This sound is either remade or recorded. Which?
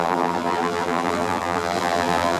remade